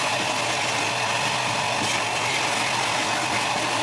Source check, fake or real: real